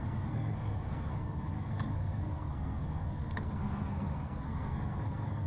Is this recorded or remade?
remade